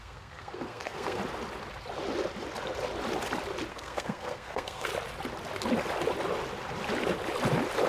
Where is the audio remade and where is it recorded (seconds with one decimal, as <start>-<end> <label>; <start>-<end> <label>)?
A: 0.0-1.2 remade; 1.2-3.7 recorded; 3.7-4.9 remade; 4.9-7.9 recorded